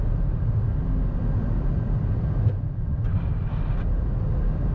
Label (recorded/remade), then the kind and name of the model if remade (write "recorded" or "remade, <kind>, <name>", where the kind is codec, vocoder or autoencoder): recorded